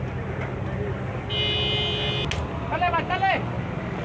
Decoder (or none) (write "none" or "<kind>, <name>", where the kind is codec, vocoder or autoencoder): none